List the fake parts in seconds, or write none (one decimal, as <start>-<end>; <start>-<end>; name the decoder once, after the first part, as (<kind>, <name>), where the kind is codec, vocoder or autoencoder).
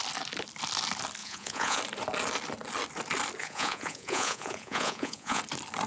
1.2-1.8 (vocoder, Vocos); 3.4-5.4